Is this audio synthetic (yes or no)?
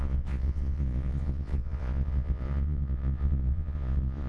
yes